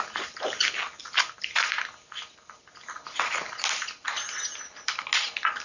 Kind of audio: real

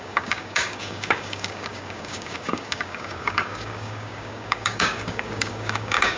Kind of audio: fake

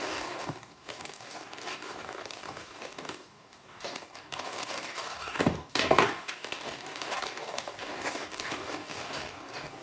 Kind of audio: fake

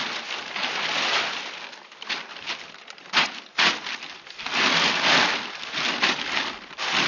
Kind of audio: real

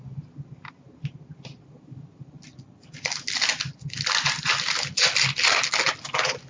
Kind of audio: real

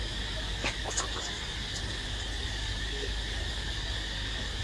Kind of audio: fake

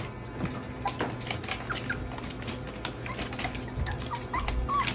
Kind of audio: real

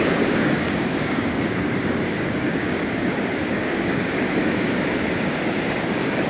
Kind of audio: fake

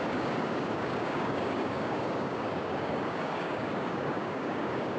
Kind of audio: fake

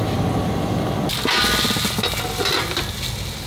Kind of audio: real